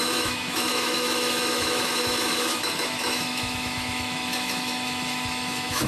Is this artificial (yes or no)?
yes